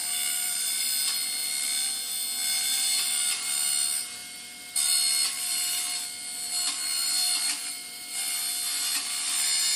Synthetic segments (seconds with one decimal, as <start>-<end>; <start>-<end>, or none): 0.0-0.8; 7.6-8.5